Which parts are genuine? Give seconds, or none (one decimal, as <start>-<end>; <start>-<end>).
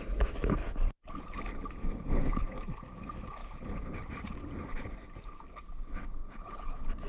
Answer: 0.6-1.7; 3.4-7.1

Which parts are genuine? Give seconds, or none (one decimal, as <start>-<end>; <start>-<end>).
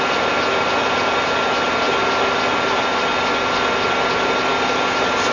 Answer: 0.0-5.3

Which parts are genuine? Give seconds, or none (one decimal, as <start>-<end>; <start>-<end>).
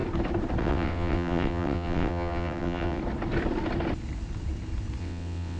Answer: 0.0-0.6; 3.0-5.0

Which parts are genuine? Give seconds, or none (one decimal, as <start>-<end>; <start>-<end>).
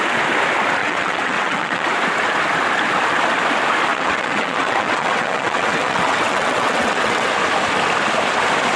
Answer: 0.0-0.8; 1.9-3.9; 7.3-8.8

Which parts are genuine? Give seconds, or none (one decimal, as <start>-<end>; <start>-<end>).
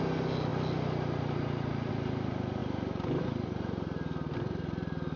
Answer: 0.0-5.2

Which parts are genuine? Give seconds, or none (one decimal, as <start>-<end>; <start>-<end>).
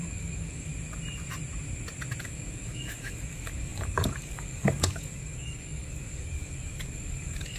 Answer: 0.7-2.2